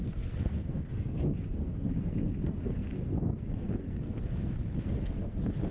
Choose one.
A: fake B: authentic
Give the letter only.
A